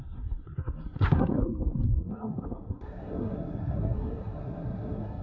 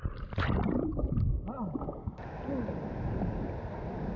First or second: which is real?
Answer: second